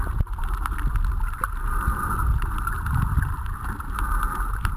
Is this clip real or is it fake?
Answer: real